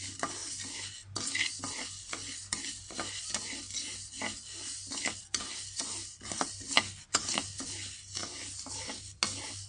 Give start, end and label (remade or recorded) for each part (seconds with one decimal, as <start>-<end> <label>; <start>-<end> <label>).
0.0-9.7 recorded